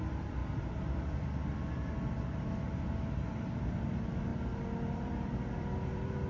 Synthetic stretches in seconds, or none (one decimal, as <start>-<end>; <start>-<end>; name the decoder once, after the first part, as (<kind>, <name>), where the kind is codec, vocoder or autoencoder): 4.3-6.3 (vocoder, BigVGAN v2)